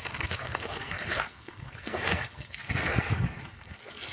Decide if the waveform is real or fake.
fake